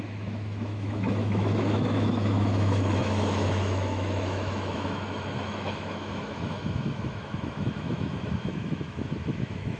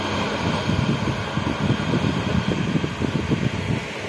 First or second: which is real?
second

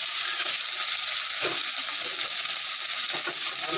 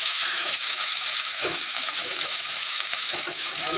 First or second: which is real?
first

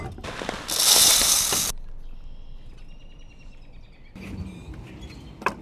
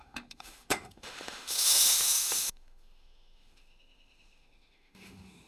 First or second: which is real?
first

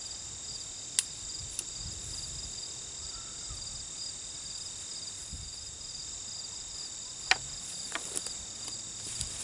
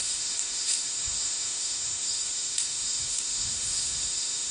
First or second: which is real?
first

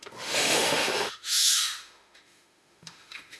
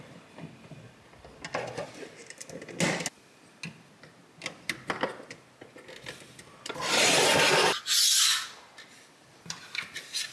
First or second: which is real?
second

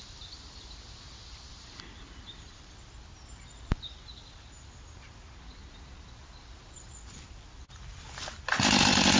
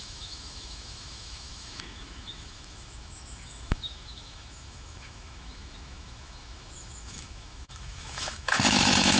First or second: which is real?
first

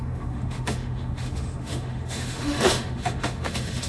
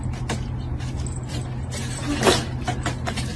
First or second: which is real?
second